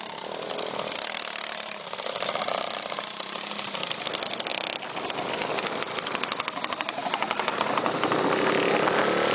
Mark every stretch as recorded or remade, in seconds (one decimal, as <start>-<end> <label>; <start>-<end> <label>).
0.0-9.3 recorded